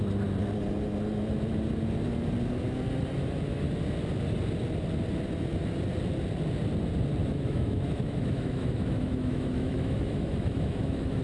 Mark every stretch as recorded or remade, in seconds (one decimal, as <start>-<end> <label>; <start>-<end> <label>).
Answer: 0.0-7.2 recorded; 7.2-11.2 remade